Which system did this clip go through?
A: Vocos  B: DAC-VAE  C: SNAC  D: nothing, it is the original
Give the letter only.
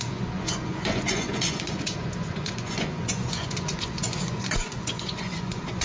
A